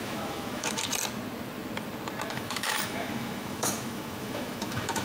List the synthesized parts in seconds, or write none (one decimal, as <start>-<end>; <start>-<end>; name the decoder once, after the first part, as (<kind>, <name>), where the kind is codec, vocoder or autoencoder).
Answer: 0.0-0.9 (autoencoder, DAC-VAE); 2.3-5.0